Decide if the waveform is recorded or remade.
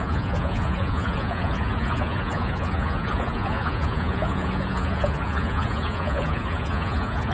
remade